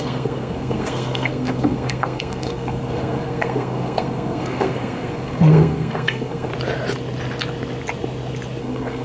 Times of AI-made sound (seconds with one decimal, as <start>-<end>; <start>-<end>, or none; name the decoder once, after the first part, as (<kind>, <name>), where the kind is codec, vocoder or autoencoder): 0.0-6.5 (codec, SNAC); 8.6-9.0